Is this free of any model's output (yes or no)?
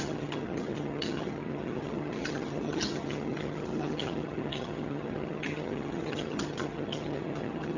no